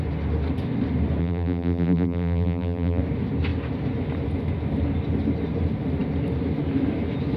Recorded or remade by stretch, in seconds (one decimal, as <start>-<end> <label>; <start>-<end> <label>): 0.0-1.2 recorded; 1.2-3.0 remade; 3.0-7.4 recorded